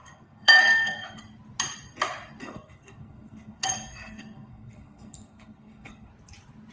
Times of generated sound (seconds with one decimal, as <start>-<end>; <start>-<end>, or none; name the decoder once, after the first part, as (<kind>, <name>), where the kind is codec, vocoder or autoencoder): 0.0-1.2 (codec, SNAC); 2.4-6.1